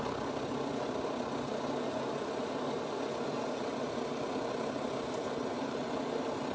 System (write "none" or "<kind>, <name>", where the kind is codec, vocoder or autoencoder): vocoder, BigVGAN v2